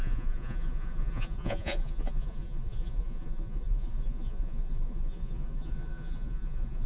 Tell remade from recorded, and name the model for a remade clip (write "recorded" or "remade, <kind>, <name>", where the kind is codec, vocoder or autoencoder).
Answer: remade, vocoder, Vocos